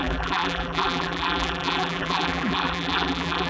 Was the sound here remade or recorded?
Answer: remade